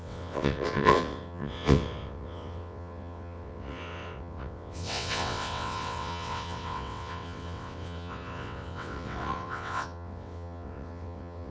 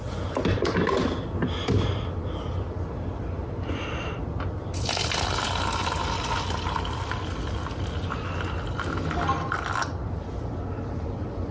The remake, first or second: first